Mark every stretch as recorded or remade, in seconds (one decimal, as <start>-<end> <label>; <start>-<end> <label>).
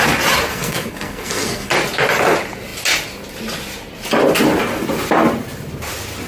0.0-0.5 recorded; 0.5-1.7 remade; 1.7-6.3 recorded